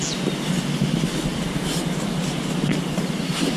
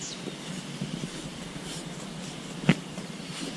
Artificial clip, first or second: second